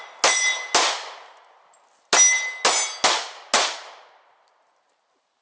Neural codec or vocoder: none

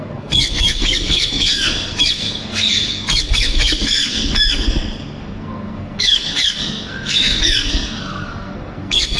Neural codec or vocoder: codec, SNAC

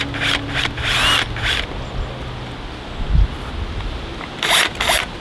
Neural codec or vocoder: none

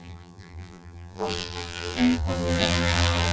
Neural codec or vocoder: vocoder, BigVGAN v2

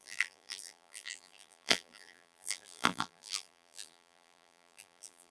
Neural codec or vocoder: vocoder, BigVGAN v2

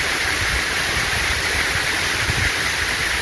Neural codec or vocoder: none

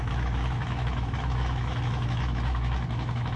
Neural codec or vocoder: autoencoder, DAC-VAE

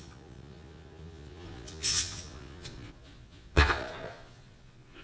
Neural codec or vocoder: vocoder, Vocos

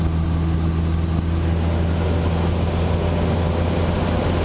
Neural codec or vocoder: none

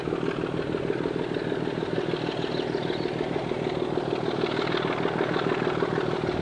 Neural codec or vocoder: none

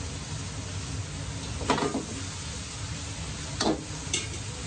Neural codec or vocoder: none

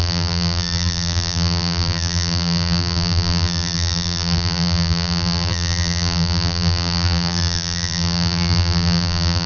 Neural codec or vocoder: vocoder, BigVGAN v2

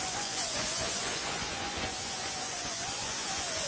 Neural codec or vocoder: vocoder, Vocos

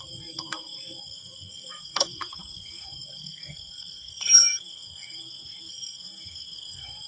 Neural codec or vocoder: codec, SNAC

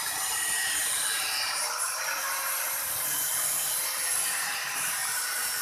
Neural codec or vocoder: vocoder, BigVGAN v2